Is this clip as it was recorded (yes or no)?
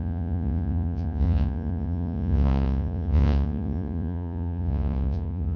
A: no